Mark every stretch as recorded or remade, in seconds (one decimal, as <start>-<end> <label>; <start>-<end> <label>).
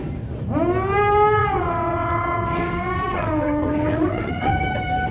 0.0-1.4 recorded; 1.4-4.5 remade; 4.5-5.1 recorded